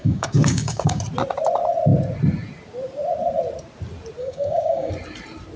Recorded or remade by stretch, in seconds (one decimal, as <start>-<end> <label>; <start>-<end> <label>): 0.0-1.0 remade; 1.0-4.2 recorded; 4.2-4.9 remade; 4.9-5.6 recorded